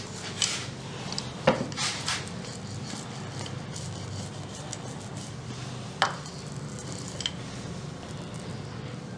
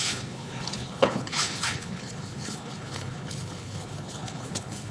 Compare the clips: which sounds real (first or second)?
first